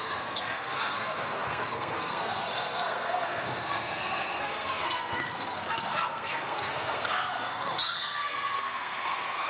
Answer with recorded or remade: remade